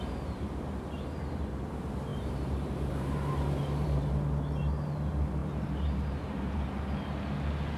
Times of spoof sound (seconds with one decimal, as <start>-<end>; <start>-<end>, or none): 2.1-4.1; 5.4-6.7